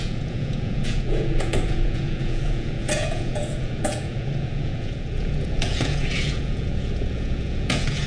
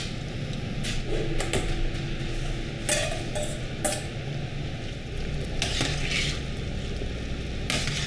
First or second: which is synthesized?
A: first